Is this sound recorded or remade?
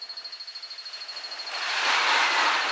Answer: recorded